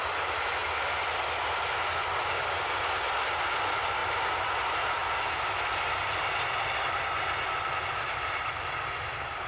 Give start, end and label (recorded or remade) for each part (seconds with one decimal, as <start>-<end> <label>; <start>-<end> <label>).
0.0-4.0 recorded; 4.0-4.5 remade; 4.5-9.5 recorded